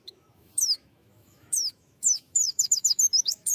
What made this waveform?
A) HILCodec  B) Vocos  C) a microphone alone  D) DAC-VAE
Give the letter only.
D